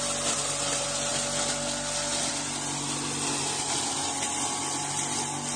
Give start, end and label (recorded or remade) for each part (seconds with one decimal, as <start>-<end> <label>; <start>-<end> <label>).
0.0-5.6 recorded